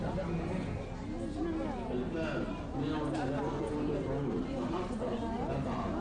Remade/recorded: recorded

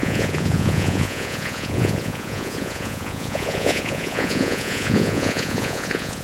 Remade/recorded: remade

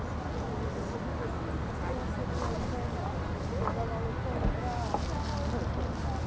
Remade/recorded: recorded